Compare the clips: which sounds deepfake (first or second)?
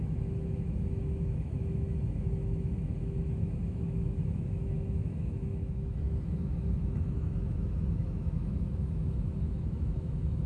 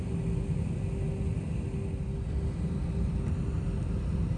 first